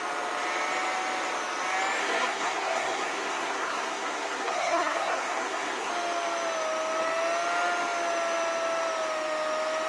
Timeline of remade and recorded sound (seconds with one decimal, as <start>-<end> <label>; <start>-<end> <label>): 0.0-2.0 recorded; 2.0-5.9 remade; 5.9-9.9 recorded